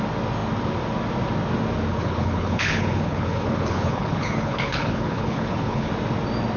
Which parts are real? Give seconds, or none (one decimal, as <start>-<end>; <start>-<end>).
0.0-1.9; 5.9-6.6